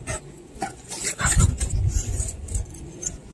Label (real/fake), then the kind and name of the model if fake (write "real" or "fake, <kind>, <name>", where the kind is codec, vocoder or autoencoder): fake, vocoder, Vocos